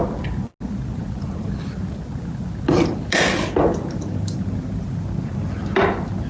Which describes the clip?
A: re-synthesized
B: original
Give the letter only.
B